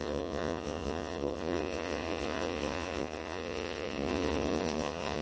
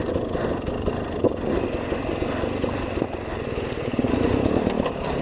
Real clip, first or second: second